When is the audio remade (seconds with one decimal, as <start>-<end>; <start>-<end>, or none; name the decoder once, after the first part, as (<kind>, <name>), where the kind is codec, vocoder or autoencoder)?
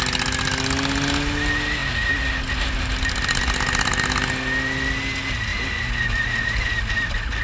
none